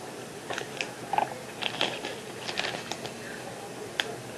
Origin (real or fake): real